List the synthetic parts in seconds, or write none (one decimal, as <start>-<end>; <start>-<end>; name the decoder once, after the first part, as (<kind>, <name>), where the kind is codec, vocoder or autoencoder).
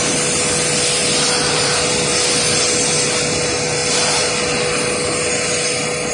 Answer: 1.0-1.9 (vocoder, BigVGAN v2); 3.8-4.3